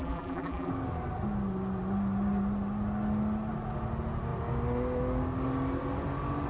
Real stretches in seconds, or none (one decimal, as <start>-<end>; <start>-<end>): 0.7-6.5